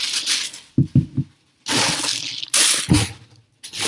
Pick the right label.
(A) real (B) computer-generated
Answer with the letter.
A